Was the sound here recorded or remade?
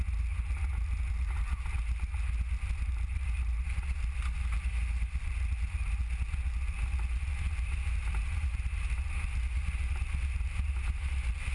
recorded